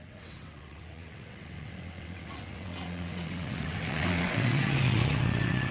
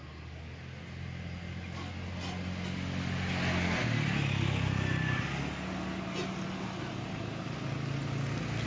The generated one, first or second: first